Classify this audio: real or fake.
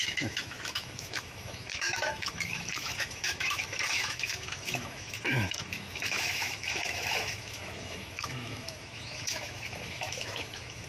fake